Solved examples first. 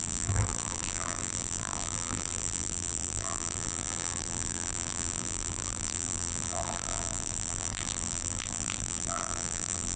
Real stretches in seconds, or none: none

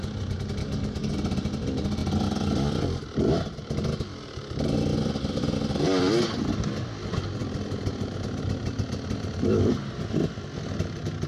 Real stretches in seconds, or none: 0.0-0.6; 1.1-11.3